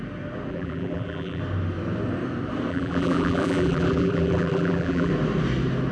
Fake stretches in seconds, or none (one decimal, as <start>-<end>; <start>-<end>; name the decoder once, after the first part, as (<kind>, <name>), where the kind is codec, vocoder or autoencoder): 0.5-1.4 (vocoder, BigVGAN v2); 2.7-5.1